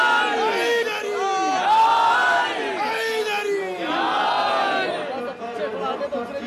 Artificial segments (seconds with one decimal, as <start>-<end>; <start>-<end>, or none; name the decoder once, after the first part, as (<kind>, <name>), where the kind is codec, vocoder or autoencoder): 2.2-2.9 (vocoder, BigVGAN v2)